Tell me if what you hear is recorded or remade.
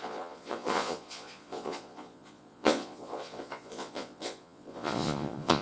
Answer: remade